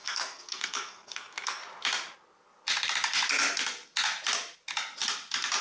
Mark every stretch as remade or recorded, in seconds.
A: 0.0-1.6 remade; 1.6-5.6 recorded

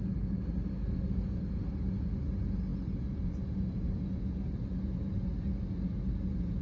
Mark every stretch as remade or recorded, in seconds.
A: 0.0-0.8 recorded; 0.8-1.4 remade; 1.4-6.6 recorded

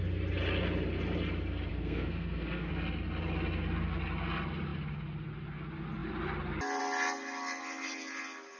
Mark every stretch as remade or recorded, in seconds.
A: 0.0-1.7 recorded; 1.7-2.7 remade; 2.7-8.6 recorded

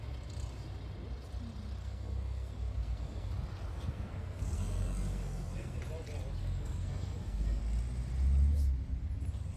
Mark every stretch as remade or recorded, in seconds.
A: 0.0-1.8 recorded; 1.8-3.3 remade; 3.3-3.7 recorded; 3.7-5.8 remade; 5.8-6.4 recorded; 6.4-7.6 remade; 7.6-9.6 recorded

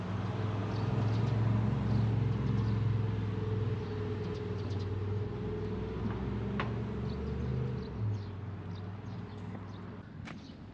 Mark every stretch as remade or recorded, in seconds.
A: 0.0-10.7 recorded

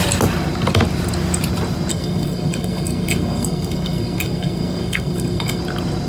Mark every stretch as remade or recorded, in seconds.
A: 0.0-1.9 recorded; 1.9-5.6 remade; 5.6-6.1 recorded